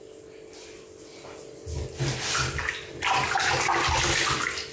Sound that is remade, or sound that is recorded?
recorded